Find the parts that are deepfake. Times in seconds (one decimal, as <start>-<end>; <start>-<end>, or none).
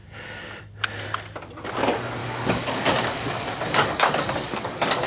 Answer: 2.2-5.1